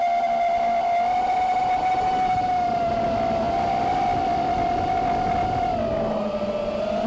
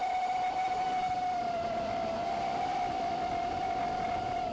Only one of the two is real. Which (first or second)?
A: first